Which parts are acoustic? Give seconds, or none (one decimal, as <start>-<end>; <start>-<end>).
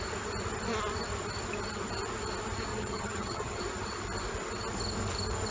0.0-2.7; 3.6-5.5